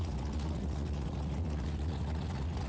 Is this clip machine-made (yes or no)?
yes